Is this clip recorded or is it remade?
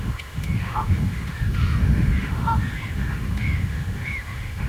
remade